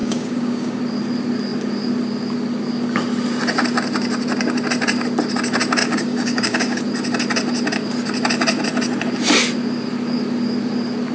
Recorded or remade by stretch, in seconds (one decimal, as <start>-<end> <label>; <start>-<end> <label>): 0.0-0.8 remade; 0.8-5.8 recorded; 5.8-6.8 remade; 6.8-11.1 recorded